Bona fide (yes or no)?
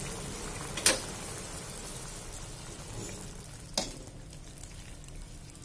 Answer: yes